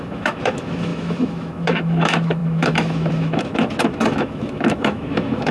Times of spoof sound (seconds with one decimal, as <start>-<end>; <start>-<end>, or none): 0.0-5.5